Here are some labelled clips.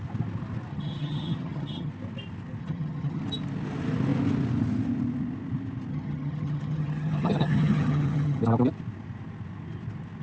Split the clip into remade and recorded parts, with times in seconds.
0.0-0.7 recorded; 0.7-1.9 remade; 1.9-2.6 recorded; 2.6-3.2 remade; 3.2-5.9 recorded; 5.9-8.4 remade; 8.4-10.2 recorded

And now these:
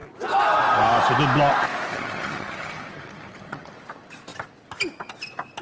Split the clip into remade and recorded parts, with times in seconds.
0.0-1.9 recorded; 1.9-3.7 remade; 3.7-5.6 recorded

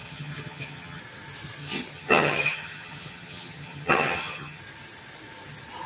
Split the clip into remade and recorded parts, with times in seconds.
0.0-1.0 remade; 1.0-1.6 recorded; 1.6-4.6 remade; 4.6-5.9 recorded

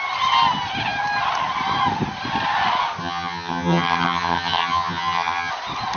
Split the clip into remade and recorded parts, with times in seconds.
0.0-3.0 recorded; 3.0-5.5 remade; 5.5-6.0 recorded

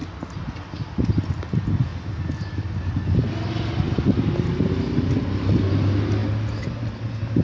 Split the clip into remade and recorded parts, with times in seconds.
0.0-7.4 recorded

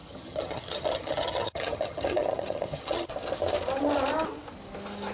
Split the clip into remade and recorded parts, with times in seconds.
0.0-3.1 remade; 3.1-5.1 recorded